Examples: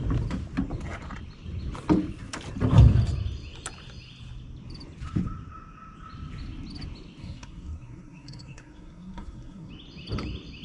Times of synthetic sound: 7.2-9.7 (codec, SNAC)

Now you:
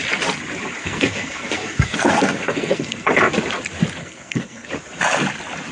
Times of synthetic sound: 0.8-3.2 (codec, SNAC); 4.0-4.7

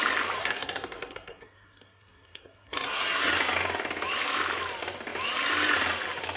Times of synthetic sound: 0.4-3.3 (codec, SNAC)

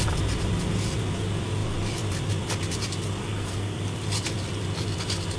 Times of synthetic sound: 3.2-3.8 (codec, SNAC)

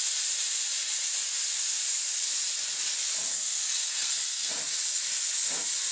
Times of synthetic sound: 3.3-4.5 (codec, SNAC)

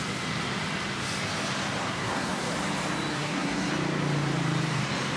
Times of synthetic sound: 1.8-2.5 (codec, SNAC); 3.1-3.7

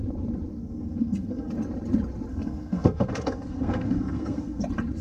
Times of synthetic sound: 0.6-1.5 (codec, SNAC); 2.3-4.6

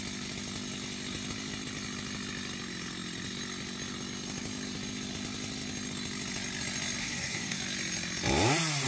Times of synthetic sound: 7.0-7.6 (codec, SNAC)